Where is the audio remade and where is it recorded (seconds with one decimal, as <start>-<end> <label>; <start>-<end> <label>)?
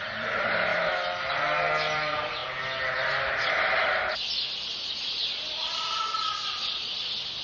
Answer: 0.0-0.7 recorded; 0.7-1.3 remade; 1.3-7.4 recorded